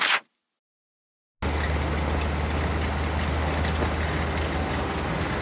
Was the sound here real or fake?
real